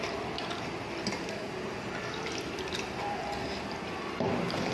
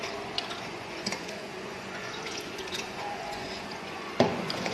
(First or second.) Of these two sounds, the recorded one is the first